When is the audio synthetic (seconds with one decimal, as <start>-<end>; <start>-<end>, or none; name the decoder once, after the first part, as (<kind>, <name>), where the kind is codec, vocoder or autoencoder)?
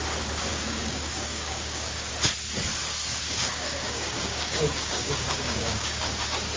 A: 0.5-2.1 (codec, DAC); 3.1-6.1